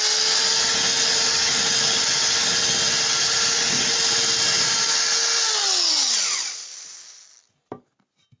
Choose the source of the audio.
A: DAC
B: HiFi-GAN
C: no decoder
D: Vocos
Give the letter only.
C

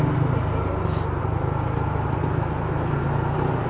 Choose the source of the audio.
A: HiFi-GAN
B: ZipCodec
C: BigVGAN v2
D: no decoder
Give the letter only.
D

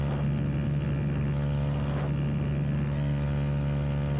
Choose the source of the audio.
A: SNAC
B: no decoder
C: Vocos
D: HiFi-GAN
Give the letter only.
B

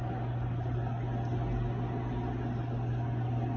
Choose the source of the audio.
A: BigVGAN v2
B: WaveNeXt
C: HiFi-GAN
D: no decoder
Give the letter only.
D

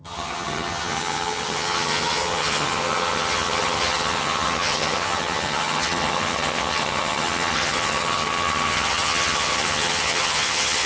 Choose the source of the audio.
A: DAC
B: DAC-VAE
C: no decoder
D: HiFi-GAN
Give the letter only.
D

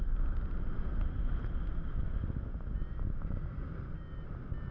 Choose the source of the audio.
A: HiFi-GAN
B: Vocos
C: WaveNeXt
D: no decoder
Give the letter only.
D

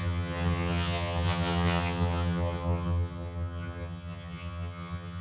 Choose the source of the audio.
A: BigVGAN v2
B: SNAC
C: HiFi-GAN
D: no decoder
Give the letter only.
C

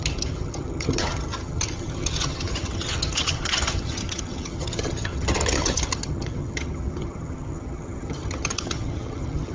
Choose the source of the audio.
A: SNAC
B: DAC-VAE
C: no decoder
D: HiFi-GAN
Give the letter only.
D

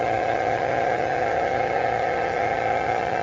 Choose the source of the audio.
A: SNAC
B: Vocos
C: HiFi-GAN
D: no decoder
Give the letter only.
C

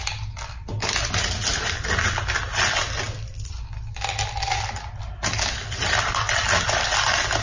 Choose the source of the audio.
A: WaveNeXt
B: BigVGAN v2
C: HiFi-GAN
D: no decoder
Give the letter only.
D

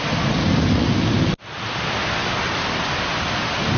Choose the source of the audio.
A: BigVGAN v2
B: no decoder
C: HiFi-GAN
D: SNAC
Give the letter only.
B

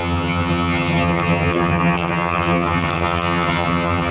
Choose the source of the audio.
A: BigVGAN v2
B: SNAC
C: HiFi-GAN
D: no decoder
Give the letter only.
C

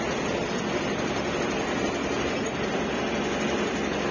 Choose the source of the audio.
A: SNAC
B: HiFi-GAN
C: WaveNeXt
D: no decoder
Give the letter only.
D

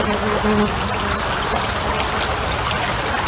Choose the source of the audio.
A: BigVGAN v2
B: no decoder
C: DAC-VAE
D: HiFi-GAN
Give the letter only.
B